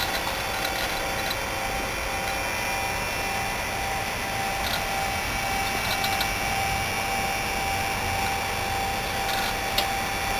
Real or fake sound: real